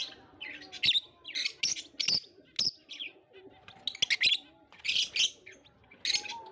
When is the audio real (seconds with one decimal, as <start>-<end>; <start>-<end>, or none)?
0.0-6.5

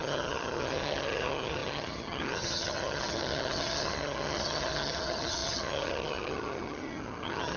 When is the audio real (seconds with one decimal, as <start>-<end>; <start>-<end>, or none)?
none

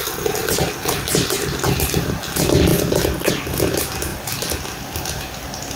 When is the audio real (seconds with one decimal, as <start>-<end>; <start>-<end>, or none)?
0.0-5.8

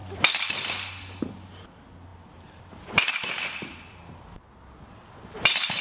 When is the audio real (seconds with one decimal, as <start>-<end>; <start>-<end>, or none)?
1.3-5.8

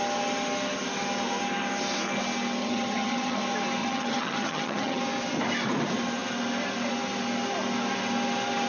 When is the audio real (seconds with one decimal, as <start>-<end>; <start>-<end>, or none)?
0.0-2.6; 3.4-3.8; 5.0-8.7

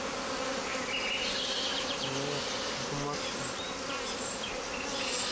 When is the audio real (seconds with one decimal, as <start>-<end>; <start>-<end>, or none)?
0.0-5.3